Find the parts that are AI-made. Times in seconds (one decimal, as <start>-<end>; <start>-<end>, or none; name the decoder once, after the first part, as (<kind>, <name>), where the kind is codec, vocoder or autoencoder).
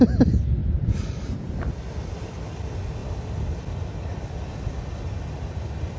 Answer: 0.6-1.5 (vocoder, BigVGAN v2)